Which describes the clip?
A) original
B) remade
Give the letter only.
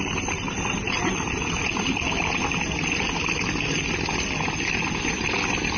A